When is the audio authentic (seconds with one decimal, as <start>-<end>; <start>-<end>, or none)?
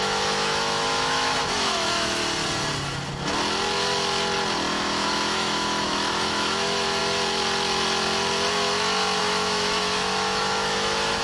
2.2-4.7; 7.0-9.2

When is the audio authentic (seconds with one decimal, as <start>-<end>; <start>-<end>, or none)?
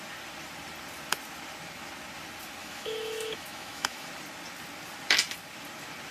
0.0-2.6; 4.1-6.1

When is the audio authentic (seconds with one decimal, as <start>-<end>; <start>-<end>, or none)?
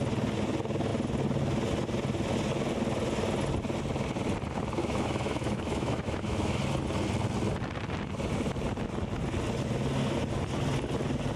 0.0-4.8; 6.6-11.4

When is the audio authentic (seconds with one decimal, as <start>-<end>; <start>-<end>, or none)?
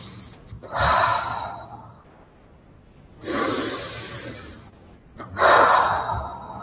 0.0-6.6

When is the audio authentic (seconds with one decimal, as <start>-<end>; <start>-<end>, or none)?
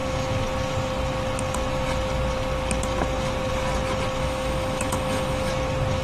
0.0-4.2; 5.5-6.0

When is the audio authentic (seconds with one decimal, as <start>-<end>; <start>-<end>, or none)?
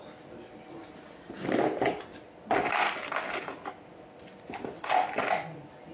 0.0-5.9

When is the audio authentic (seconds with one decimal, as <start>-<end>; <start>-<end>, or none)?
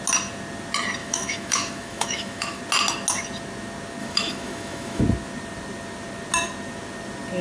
0.0-1.0; 2.6-4.0; 5.0-7.4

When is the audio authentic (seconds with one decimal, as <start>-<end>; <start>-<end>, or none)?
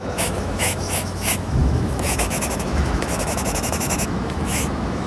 none